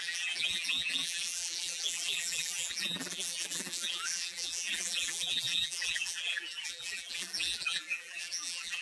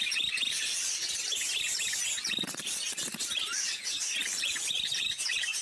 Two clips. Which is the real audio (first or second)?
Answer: second